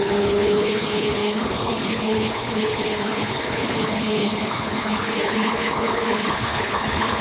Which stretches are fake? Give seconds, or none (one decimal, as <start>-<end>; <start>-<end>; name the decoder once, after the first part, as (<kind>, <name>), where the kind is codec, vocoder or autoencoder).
0.0-7.2 (codec, HILCodec)